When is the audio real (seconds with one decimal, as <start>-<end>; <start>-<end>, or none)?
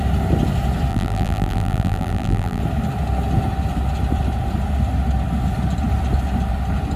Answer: 0.0-0.9; 2.6-7.0